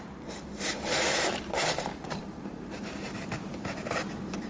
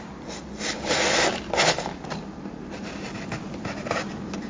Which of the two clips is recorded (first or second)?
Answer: second